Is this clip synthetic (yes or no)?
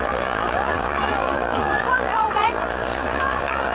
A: yes